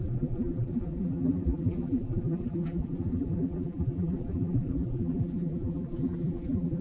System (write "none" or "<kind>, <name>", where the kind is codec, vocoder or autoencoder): vocoder, BigVGAN v2